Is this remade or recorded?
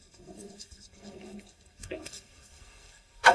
remade